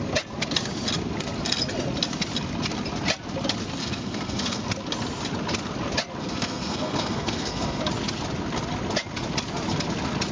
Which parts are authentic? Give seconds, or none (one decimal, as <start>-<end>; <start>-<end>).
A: 0.0-3.8; 4.6-6.2; 7.8-10.3

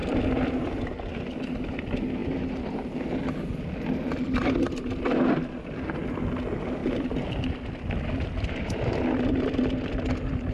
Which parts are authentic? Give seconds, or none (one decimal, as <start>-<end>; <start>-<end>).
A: 0.0-2.2; 5.2-6.8; 9.0-10.5

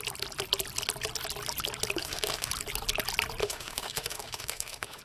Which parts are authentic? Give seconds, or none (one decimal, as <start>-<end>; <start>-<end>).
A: 0.0-2.0; 2.5-3.4

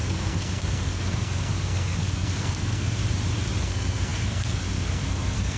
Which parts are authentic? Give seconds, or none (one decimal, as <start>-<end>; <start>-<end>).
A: 3.0-3.6